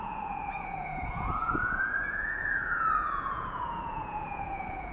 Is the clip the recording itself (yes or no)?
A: no